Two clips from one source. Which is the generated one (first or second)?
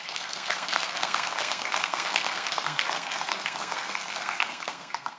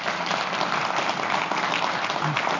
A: first